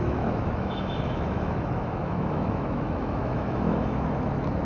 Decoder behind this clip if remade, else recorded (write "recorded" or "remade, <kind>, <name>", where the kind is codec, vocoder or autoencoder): remade, autoencoder, DAC-VAE